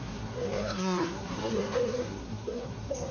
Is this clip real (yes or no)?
no